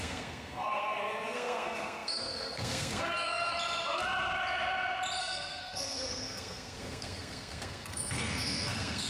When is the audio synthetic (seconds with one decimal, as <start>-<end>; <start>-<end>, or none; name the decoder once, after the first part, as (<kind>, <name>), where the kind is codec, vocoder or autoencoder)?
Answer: 0.0-3.5 (codec, SNAC); 5.2-9.1